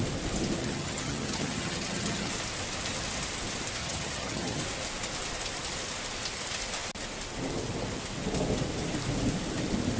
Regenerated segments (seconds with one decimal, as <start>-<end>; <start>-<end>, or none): 0.6-2.3; 3.8-4.6